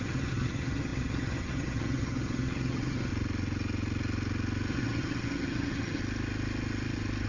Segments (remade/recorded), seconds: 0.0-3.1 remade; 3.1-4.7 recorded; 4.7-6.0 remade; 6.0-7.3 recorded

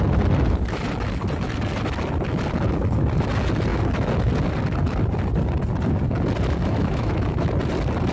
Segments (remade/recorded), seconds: 0.0-6.6 recorded; 6.6-7.5 remade; 7.5-8.1 recorded